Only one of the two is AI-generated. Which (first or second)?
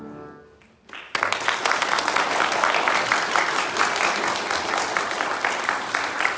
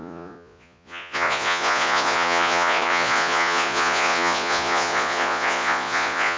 second